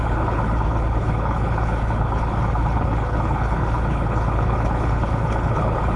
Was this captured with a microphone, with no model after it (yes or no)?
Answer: no